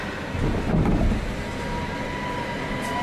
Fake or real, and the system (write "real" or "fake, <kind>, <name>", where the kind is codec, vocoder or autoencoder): real